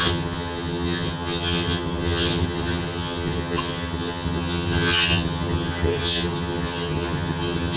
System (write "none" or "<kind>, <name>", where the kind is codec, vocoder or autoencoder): vocoder, HiFi-GAN